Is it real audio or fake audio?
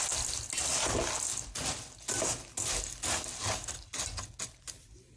real